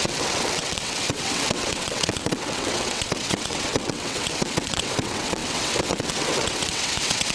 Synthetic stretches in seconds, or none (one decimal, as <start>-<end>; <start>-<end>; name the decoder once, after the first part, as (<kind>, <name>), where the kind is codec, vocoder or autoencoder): 0.0-7.3 (vocoder, WaveNeXt)